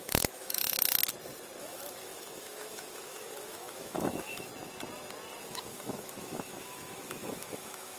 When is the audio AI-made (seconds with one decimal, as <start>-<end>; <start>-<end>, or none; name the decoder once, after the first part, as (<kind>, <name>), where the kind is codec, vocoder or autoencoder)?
0.0-1.0 (autoencoder, DAC-VAE); 1.6-4.5; 5.4-8.0